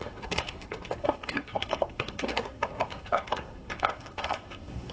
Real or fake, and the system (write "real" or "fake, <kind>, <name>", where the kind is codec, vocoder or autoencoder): fake, codec, SNAC